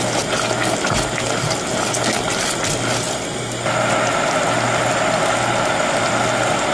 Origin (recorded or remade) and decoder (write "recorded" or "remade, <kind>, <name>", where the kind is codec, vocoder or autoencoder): recorded